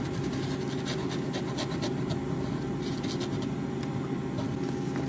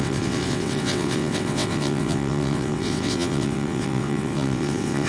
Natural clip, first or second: first